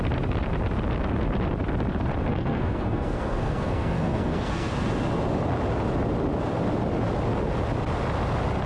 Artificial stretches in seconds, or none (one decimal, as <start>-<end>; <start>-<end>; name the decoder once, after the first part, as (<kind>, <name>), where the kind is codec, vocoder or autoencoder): 2.3-4.7 (codec, SNAC)